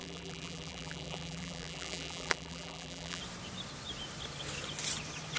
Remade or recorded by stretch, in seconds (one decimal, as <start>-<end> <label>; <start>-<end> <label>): 0.0-3.2 remade; 3.2-5.4 recorded